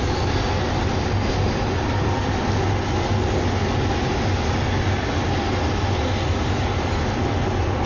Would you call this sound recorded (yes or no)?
yes